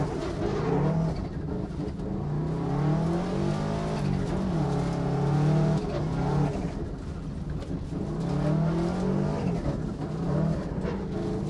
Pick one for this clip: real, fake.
real